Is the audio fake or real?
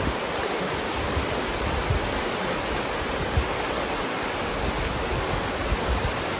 real